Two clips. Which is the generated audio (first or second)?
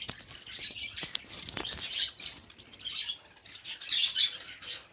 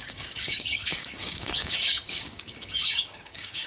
second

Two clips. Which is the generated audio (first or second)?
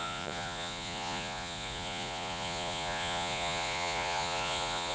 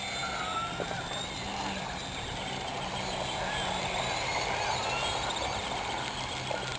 first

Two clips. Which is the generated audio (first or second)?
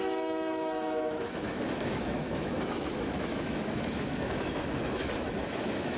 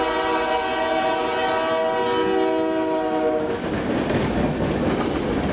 first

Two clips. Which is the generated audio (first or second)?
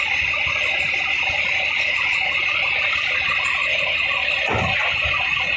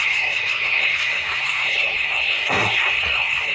second